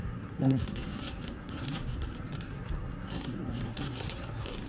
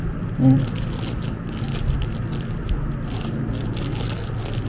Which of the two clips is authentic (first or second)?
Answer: second